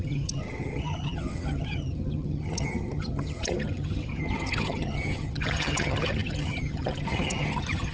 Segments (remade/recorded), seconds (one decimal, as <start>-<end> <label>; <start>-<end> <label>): 0.0-7.9 remade

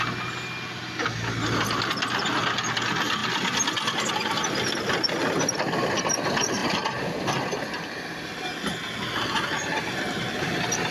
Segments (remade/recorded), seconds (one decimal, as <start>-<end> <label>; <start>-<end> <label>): 0.0-10.9 recorded

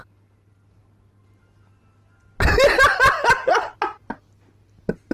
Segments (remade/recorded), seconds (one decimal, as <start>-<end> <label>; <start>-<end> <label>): 0.0-5.1 recorded

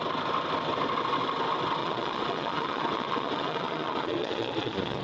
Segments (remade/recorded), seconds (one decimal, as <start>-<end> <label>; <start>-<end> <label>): 0.0-1.8 recorded; 1.8-5.0 remade